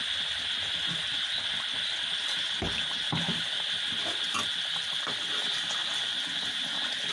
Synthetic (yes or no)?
no